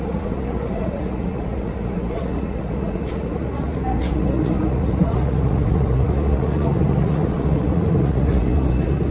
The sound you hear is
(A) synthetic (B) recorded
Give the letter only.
A